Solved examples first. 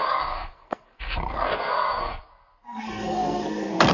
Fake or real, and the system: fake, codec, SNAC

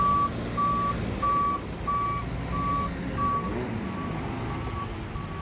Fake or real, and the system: real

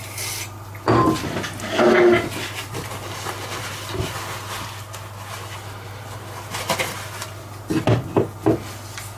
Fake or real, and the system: real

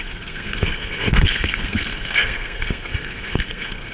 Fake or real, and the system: fake, codec, SNAC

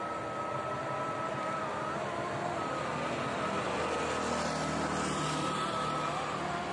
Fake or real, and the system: real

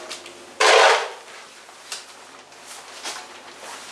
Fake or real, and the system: real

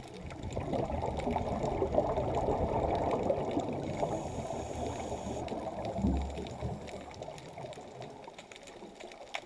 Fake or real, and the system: real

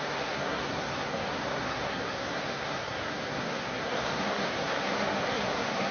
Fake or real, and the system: fake, codec, SNAC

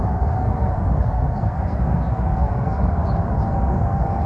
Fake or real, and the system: fake, codec, SNAC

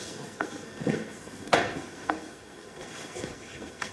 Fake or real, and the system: fake, codec, SNAC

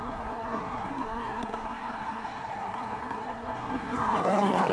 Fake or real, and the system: fake, codec, SNAC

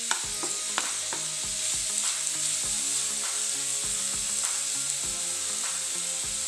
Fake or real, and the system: real